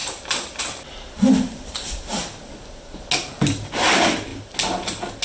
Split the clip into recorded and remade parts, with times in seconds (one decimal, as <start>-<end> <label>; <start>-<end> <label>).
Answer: 0.0-5.2 recorded